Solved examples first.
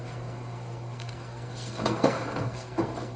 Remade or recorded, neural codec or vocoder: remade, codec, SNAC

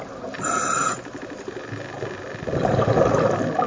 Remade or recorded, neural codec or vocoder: recorded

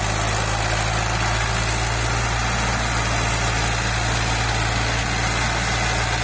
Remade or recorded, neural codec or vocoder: recorded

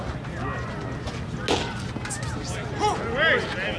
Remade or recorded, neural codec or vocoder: recorded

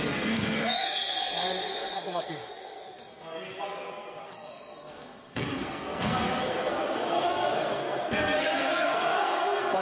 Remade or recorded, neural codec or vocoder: remade, codec, SNAC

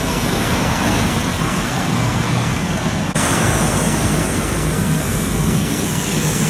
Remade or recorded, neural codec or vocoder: remade, codec, SNAC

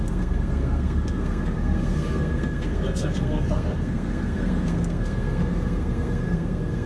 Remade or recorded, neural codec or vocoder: remade, codec, SNAC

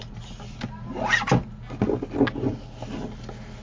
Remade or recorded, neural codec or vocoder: recorded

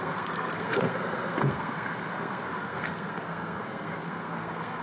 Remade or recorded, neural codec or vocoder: remade, codec, SNAC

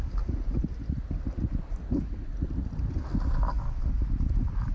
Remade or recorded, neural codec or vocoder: recorded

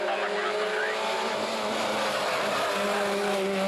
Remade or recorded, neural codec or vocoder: recorded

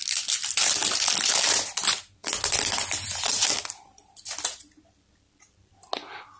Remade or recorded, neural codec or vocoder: recorded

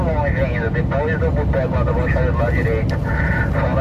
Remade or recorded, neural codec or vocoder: recorded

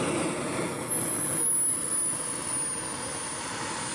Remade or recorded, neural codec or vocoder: recorded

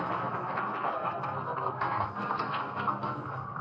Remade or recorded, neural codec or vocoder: remade, codec, SNAC